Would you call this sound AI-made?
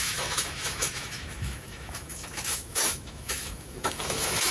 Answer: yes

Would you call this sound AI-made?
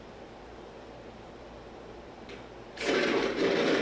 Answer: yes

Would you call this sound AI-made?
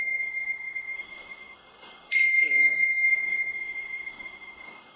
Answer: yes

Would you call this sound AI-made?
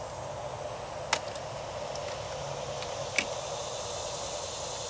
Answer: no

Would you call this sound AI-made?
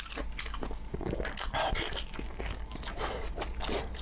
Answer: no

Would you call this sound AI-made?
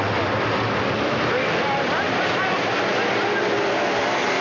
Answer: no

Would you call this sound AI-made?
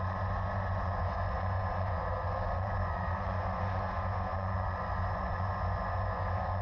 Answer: yes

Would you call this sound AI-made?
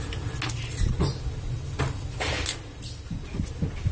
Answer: no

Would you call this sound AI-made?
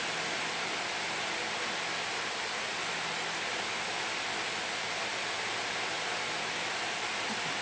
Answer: no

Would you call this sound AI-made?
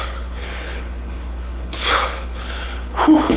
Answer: yes